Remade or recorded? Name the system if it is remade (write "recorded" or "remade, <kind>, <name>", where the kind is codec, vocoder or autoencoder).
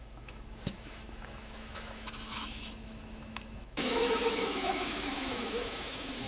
remade, autoencoder, DAC-VAE